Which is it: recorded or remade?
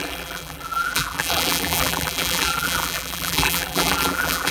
remade